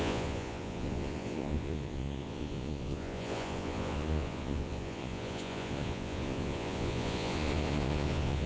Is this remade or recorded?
remade